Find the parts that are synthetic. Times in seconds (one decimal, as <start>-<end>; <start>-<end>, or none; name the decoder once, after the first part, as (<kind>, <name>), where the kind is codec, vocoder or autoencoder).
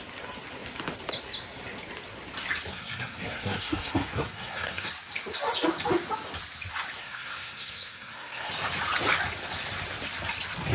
2.7-4.9 (codec, SNAC); 7.0-8.5